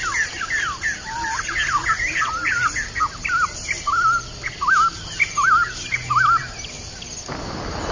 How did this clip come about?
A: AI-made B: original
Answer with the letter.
B